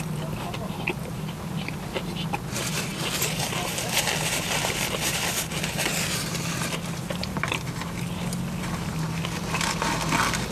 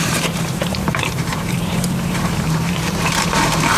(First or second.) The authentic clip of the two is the first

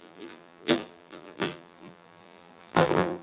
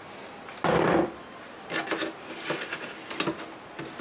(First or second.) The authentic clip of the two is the second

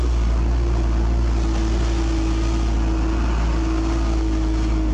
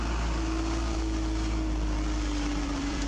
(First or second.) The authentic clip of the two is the first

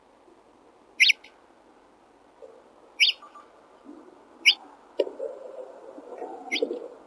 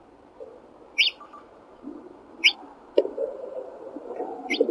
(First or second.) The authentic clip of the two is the first